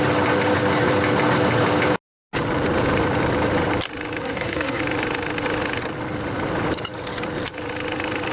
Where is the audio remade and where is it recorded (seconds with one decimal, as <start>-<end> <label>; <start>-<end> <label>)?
0.0-4.2 recorded; 4.2-4.8 remade; 4.8-8.3 recorded